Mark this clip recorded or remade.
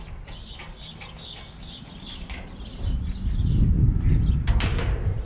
recorded